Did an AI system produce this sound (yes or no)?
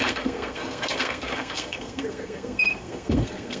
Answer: yes